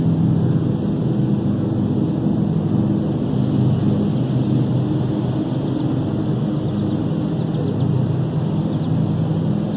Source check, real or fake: real